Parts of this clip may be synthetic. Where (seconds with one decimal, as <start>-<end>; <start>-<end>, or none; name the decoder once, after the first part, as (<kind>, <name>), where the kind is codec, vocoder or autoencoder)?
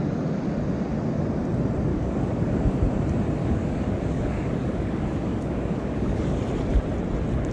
1.9-2.8 (codec, DAC); 3.4-6.4